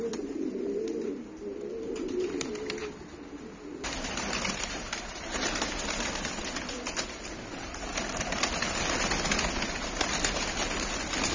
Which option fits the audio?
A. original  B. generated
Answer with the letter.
A